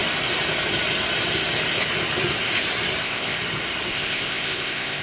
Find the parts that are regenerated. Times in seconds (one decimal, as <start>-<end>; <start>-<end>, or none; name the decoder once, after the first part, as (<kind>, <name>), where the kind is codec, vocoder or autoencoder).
3.0-3.4 (codec, ZipCodec); 3.9-5.0